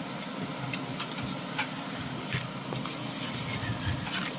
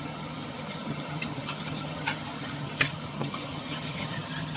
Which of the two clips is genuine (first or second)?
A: first